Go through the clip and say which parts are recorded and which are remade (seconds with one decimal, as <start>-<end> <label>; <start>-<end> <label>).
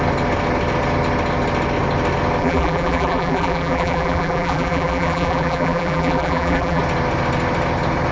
0.0-2.4 recorded; 2.4-6.8 remade; 6.8-8.1 recorded